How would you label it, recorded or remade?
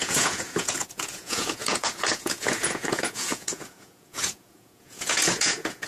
remade